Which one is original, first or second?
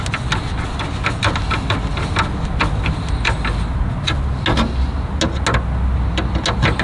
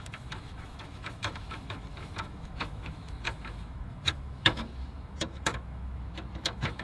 first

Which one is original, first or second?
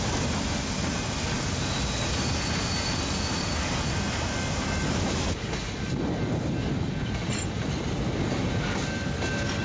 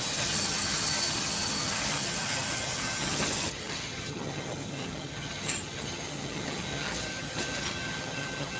first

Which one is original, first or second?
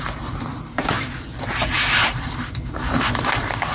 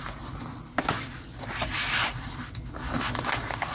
second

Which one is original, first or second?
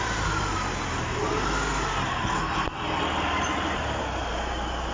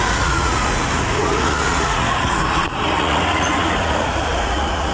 first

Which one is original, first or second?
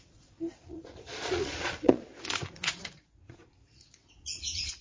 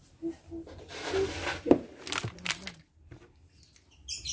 second